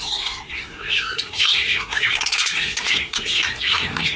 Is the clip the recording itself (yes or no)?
no